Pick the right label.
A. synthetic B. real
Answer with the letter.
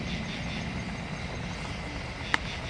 B